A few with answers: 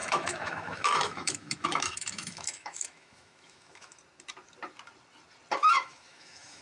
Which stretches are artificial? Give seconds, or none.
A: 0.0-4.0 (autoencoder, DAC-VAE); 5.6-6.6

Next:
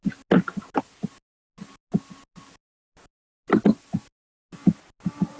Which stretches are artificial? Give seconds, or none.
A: none

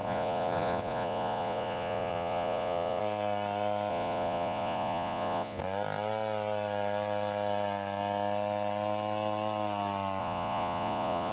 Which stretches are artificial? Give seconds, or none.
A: 0.0-3.0 (vocoder, Vocos); 3.9-5.6; 10.2-11.3

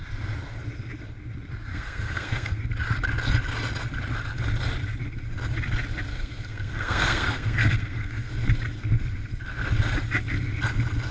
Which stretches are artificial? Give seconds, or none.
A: 1.7-2.6 (codec, SNAC); 6.1-8.3

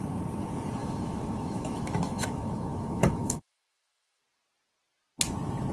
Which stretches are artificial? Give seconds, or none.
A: 0.8-4.2 (autoencoder, DAC-VAE)

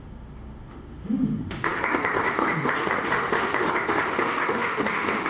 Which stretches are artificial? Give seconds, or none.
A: 0.0-5.3 (autoencoder, DAC-VAE)

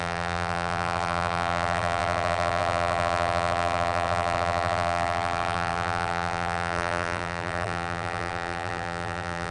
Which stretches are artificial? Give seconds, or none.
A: 0.0-9.5 (vocoder, BigVGAN v2)